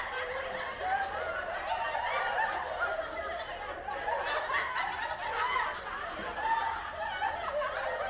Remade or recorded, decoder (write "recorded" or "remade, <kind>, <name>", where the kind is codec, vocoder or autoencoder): recorded